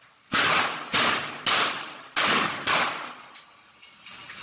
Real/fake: real